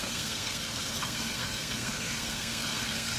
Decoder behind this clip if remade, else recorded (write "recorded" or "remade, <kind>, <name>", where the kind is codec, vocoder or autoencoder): remade, codec, SNAC